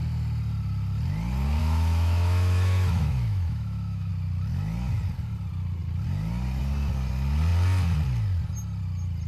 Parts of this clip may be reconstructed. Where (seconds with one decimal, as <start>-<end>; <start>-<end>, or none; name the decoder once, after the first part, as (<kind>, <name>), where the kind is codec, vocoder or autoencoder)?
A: 1.6-4.1 (autoencoder, DAC-VAE)